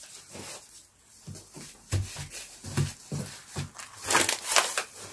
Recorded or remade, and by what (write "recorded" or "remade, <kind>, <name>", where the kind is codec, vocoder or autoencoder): recorded